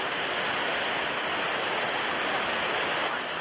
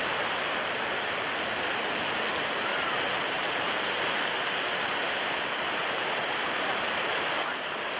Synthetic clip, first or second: second